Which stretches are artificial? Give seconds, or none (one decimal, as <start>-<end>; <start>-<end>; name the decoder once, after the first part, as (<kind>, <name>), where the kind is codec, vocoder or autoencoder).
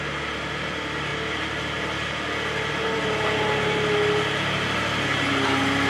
none